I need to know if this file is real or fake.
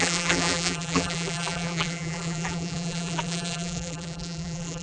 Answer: fake